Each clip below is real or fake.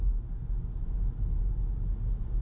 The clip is real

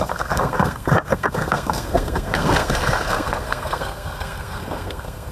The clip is fake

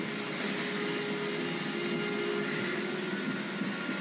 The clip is real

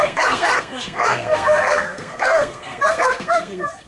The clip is fake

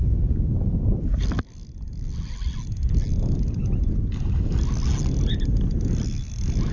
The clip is real